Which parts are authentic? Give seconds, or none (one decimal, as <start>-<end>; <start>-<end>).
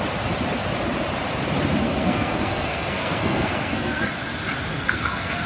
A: 0.0-1.8; 4.1-4.7